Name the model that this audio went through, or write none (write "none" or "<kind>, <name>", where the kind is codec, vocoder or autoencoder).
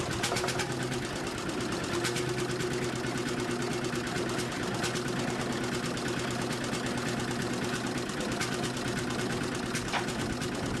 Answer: none